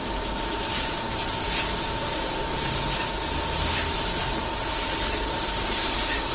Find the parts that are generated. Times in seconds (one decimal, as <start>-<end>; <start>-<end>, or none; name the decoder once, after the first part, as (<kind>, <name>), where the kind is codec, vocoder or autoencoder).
0.0-2.4 (vocoder, BigVGAN v2); 4.6-6.3